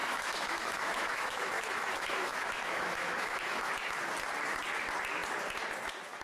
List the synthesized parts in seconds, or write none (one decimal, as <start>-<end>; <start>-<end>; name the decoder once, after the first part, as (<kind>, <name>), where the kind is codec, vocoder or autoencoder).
0.0-3.7 (autoencoder, DAC-VAE)